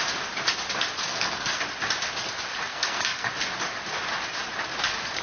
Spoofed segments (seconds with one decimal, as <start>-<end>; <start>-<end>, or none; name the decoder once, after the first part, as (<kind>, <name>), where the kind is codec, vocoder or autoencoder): 1.1-1.6 (codec, SNAC); 2.7-3.3